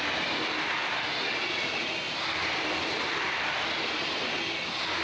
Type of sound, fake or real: real